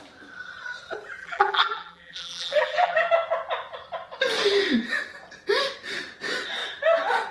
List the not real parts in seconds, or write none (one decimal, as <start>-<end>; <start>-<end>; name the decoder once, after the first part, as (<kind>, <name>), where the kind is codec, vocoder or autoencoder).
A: 1.2-3.1 (vocoder, BigVGAN v2)